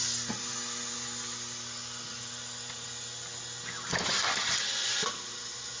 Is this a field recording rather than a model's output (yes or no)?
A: yes